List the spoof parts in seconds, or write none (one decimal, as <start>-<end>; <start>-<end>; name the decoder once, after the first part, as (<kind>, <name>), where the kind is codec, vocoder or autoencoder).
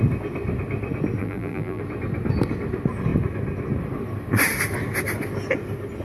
1.2-1.8 (vocoder, BigVGAN v2)